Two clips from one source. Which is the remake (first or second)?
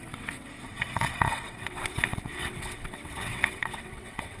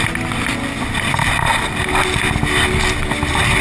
first